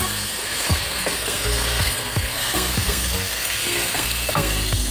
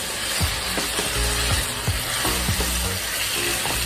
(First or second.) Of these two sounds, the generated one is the first